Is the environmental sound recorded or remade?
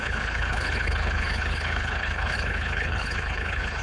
remade